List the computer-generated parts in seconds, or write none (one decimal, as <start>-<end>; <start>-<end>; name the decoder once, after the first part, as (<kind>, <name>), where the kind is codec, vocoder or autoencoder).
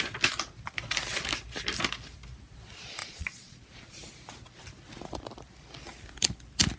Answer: 3.0-3.6 (vocoder, Vocos)